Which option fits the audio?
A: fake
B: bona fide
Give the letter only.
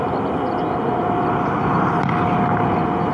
B